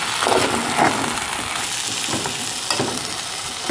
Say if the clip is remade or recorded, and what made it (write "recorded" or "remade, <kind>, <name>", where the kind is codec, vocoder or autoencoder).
recorded